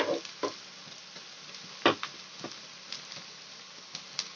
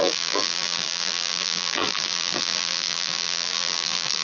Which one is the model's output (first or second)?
second